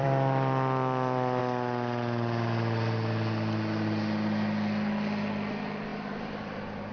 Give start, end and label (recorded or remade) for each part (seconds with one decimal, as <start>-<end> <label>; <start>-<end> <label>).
0.0-1.4 remade; 1.4-5.5 recorded; 5.5-6.9 remade